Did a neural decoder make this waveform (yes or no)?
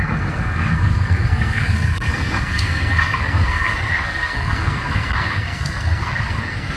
yes